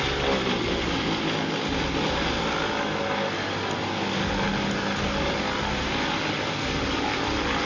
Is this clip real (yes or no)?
yes